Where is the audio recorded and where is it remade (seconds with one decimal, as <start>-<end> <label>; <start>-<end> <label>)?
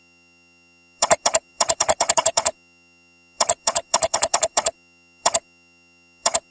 0.0-6.5 remade